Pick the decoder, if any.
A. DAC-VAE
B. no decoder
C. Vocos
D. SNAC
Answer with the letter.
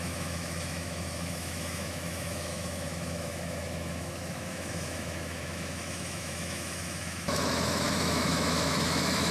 A